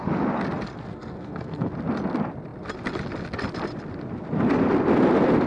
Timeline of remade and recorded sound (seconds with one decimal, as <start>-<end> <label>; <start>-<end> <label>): 0.0-0.9 recorded; 0.9-1.7 remade; 1.7-5.5 recorded